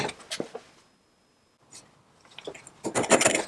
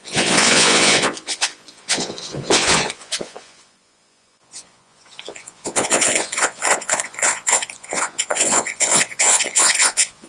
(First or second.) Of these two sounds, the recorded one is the first